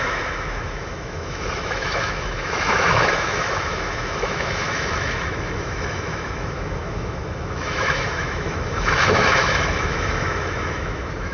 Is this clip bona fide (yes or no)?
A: no